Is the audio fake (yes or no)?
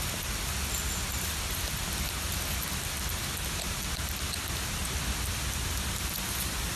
no